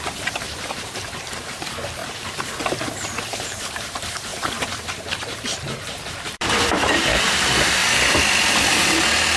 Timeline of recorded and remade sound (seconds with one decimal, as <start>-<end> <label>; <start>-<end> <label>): 0.0-2.0 remade; 2.0-3.2 recorded; 3.2-7.8 remade; 7.8-8.7 recorded; 8.7-9.4 remade